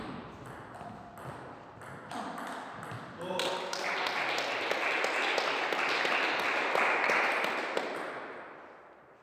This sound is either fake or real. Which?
real